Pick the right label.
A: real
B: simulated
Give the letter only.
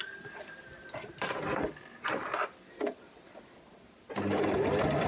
B